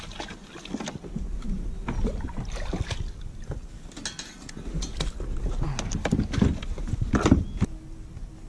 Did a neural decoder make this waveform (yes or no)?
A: no